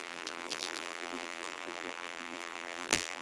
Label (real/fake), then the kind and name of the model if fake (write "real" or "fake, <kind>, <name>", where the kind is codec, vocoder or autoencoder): fake, vocoder, BigVGAN v2